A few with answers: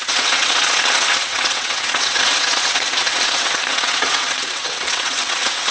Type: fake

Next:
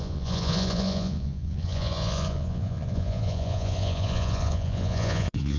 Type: fake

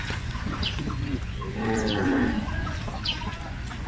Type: fake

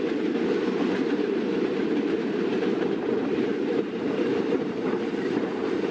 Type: fake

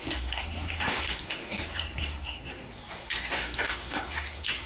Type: fake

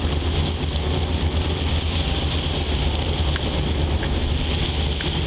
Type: real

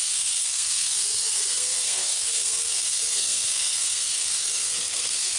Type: fake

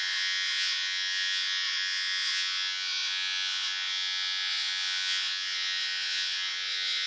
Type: fake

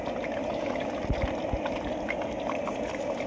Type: real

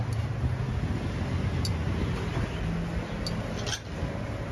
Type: real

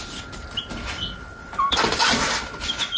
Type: real